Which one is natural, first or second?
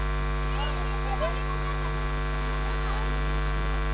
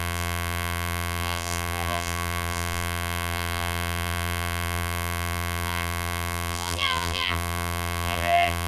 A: first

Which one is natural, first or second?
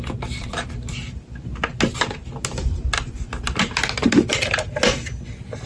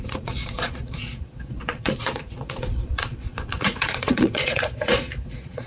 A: first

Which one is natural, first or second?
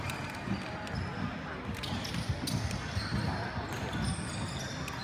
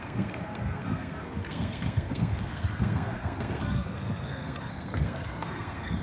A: first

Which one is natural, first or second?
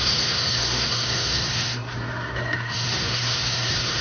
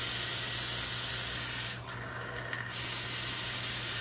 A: second